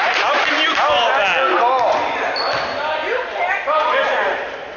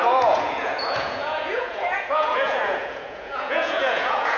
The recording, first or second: first